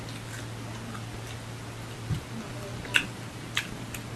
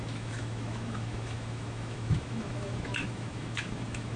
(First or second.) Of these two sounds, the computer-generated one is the second